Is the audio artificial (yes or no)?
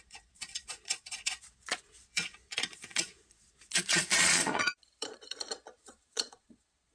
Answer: yes